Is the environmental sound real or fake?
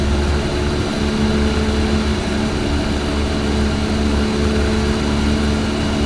real